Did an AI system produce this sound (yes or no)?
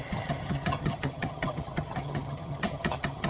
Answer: yes